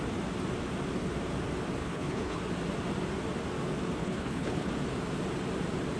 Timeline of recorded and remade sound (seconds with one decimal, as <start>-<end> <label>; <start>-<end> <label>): 0.0-1.8 recorded; 1.8-2.5 remade; 2.5-4.0 recorded; 4.0-4.7 remade; 4.7-6.0 recorded

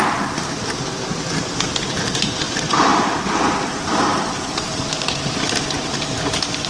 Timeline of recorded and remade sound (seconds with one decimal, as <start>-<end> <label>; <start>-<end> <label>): 0.0-2.9 remade; 2.9-3.7 recorded; 3.7-6.7 remade

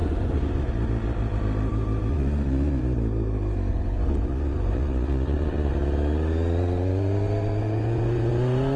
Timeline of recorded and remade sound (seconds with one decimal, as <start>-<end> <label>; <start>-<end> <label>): 0.0-0.7 remade; 0.7-2.1 recorded; 2.1-2.8 remade; 2.8-3.7 recorded; 3.7-5.7 remade; 5.7-7.6 recorded; 7.6-8.3 remade; 8.3-8.8 recorded

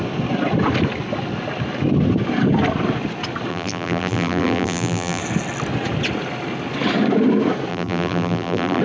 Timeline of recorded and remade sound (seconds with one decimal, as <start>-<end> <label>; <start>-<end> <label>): 0.0-3.5 recorded; 3.5-5.2 remade; 5.2-7.7 recorded; 7.7-8.8 remade

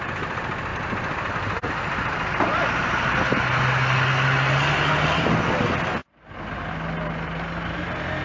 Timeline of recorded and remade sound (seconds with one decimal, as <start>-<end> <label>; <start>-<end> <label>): 0.0-6.0 recorded; 6.0-6.7 remade; 6.7-8.2 recorded

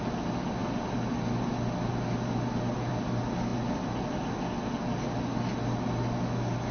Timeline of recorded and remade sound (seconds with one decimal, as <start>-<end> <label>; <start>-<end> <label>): 0.0-6.7 recorded